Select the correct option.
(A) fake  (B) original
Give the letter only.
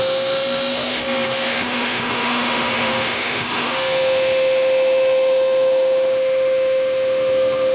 A